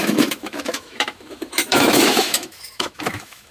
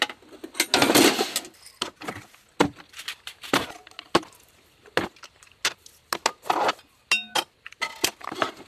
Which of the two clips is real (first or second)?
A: second